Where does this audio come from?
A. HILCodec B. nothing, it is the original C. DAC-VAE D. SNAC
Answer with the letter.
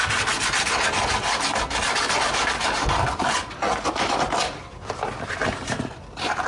B